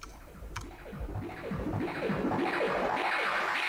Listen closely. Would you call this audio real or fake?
fake